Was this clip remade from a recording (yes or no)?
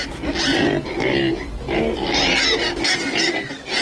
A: no